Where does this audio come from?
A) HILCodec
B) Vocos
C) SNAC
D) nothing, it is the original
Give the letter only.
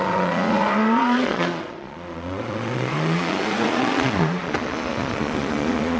B